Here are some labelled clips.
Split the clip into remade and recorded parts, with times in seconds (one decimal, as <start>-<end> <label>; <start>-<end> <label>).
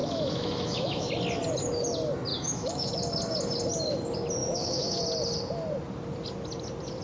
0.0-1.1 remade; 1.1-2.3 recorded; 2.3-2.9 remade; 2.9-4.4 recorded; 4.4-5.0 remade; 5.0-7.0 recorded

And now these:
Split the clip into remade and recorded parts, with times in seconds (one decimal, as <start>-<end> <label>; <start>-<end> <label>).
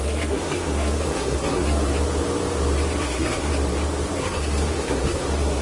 0.0-1.9 remade; 1.9-3.0 recorded; 3.0-3.5 remade; 3.5-4.2 recorded; 4.2-5.6 remade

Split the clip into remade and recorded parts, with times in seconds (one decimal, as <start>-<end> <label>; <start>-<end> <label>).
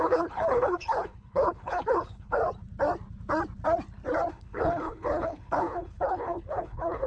0.0-2.4 remade; 2.4-4.3 recorded; 4.3-7.1 remade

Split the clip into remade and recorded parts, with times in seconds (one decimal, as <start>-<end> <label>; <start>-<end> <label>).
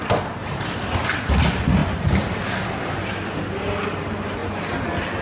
0.0-5.2 recorded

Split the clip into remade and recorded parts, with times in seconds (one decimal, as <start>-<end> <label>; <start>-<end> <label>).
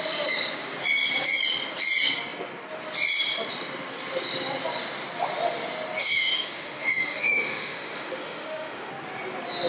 0.0-6.0 recorded; 6.0-8.9 remade; 8.9-9.7 recorded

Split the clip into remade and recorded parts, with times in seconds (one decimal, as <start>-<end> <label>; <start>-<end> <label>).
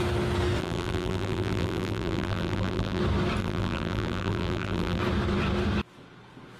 0.0-0.6 recorded; 0.6-3.0 remade; 3.0-3.4 recorded; 3.4-5.0 remade; 5.0-6.6 recorded